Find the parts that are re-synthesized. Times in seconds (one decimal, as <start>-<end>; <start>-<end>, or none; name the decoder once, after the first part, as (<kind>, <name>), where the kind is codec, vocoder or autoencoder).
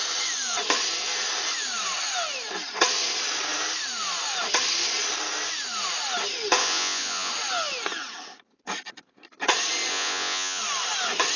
6.6-7.3 (vocoder, Vocos); 9.9-10.6